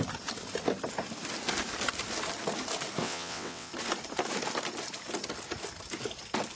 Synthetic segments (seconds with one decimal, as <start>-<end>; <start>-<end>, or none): 3.0-3.7